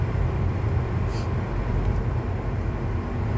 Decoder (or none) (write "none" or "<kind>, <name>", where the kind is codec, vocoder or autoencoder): none